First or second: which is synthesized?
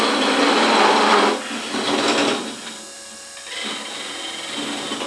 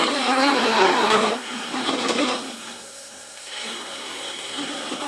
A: second